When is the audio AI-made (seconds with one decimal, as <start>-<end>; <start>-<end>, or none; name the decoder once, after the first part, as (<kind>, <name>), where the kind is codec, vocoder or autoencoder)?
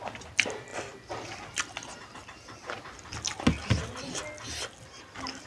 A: none